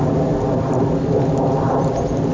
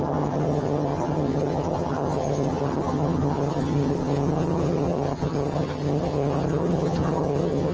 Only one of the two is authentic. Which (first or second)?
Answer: first